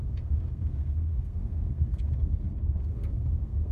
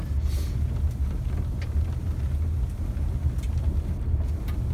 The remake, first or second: first